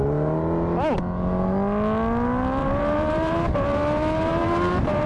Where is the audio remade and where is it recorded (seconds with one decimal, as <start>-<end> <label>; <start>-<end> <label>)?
0.0-2.6 recorded; 2.6-5.1 remade